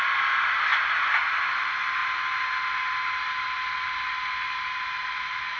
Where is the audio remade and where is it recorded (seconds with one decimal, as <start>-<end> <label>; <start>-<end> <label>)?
0.0-5.6 recorded